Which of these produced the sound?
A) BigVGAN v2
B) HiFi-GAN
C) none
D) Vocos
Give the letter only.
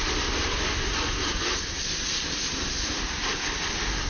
C